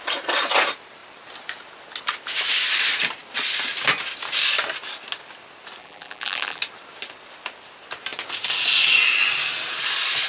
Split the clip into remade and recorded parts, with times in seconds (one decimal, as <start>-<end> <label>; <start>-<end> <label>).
0.0-5.8 recorded; 5.8-6.6 remade; 6.6-10.3 recorded

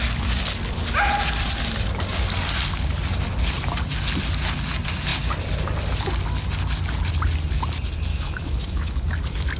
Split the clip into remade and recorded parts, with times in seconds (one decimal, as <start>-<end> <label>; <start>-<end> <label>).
0.0-8.1 recorded; 8.1-9.0 remade; 9.0-9.6 recorded

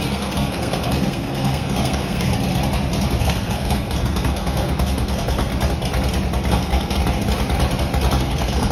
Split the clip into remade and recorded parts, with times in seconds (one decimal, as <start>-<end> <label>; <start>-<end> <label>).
0.0-2.3 remade; 2.3-3.2 recorded; 3.2-5.5 remade; 5.5-6.5 recorded; 6.5-7.0 remade; 7.0-8.2 recorded; 8.2-8.7 remade

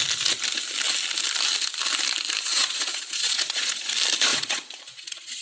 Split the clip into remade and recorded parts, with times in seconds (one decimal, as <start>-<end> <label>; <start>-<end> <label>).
0.0-2.5 recorded; 2.5-3.9 remade; 3.9-4.3 recorded; 4.3-5.4 remade

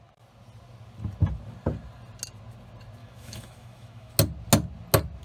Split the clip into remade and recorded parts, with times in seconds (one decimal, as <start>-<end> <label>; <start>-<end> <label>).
0.0-3.0 recorded; 3.0-4.1 remade; 4.1-5.2 recorded